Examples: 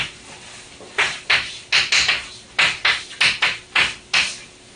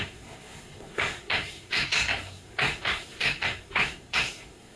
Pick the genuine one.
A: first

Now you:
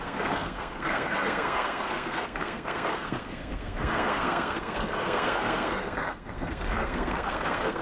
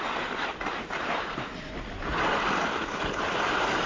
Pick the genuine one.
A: second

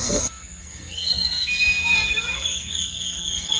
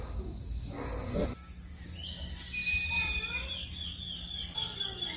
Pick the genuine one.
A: second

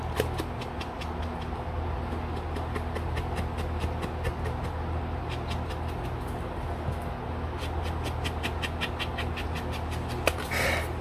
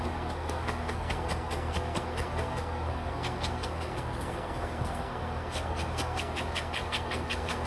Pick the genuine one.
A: first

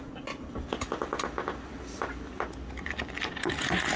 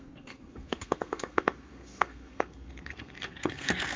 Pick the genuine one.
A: first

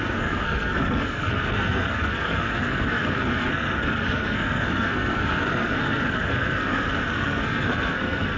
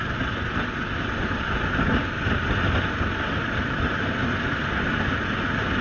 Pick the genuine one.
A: second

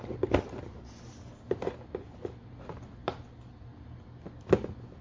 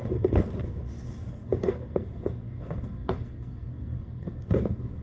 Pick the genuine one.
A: first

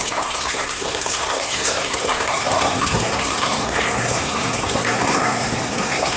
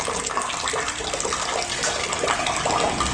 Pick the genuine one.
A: second